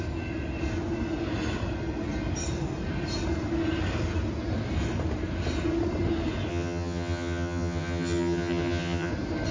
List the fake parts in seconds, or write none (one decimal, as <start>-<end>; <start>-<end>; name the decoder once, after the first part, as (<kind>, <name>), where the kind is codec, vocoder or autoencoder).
6.5-9.1 (vocoder, HiFi-GAN)